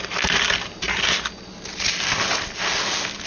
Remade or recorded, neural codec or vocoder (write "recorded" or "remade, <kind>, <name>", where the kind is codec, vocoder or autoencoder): recorded